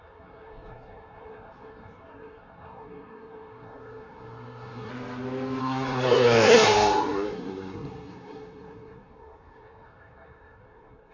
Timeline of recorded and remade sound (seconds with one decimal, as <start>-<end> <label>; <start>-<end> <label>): 0.0-4.9 remade; 4.9-5.6 recorded; 5.6-11.1 remade